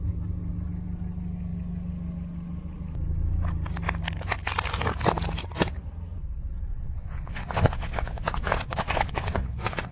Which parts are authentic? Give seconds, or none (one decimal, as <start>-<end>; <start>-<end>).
0.0-6.7